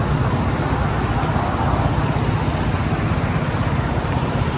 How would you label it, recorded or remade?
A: recorded